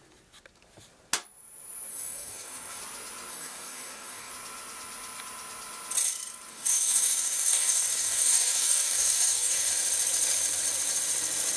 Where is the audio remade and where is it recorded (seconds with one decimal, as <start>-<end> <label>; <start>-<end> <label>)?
0.0-1.9 recorded; 1.9-2.8 remade; 2.8-3.3 recorded; 3.3-4.3 remade; 4.3-6.5 recorded; 6.5-9.7 remade; 9.7-11.6 recorded